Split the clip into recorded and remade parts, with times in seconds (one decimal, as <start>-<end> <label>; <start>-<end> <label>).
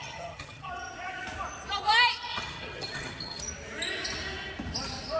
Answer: 0.0-0.7 remade; 0.7-2.3 recorded; 2.3-3.4 remade; 3.4-5.2 recorded